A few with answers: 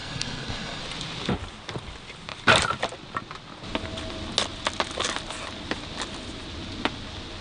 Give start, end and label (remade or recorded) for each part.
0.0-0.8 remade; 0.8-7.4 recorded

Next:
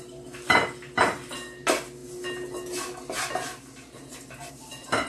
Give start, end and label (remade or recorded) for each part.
0.0-5.1 recorded

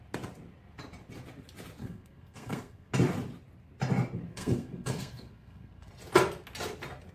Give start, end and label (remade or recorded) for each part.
0.0-1.8 recorded; 1.8-2.9 remade; 2.9-4.3 recorded; 4.3-5.9 remade; 5.9-7.1 recorded

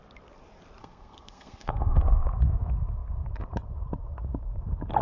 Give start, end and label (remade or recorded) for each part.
0.0-0.8 recorded; 0.8-2.0 remade; 2.0-5.0 recorded

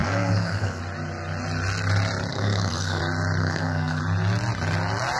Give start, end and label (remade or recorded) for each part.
0.0-0.8 remade; 0.8-2.3 recorded; 2.3-3.0 remade; 3.0-3.4 recorded; 3.4-4.0 remade; 4.0-5.2 recorded

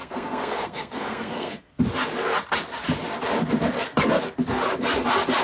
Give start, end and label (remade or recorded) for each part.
0.0-1.8 remade; 1.8-5.4 recorded

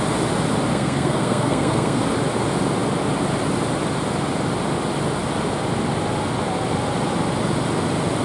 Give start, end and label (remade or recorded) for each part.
0.0-0.7 recorded; 0.7-2.0 remade; 2.0-8.2 recorded